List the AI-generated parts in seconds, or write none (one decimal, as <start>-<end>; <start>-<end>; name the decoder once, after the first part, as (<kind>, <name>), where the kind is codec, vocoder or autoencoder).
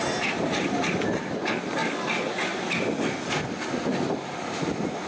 none